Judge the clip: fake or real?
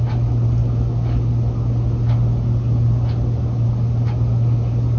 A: real